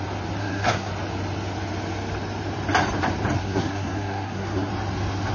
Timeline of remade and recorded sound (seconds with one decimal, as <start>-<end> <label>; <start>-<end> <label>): 0.0-0.4 recorded; 0.4-0.9 remade; 0.9-3.4 recorded; 3.4-4.7 remade; 4.7-5.3 recorded